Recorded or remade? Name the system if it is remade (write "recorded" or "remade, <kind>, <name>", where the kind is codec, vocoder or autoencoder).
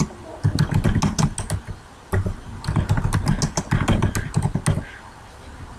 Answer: recorded